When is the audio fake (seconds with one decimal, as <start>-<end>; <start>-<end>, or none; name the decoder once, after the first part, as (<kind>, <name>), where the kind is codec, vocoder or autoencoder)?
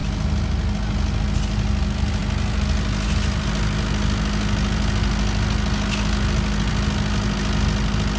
none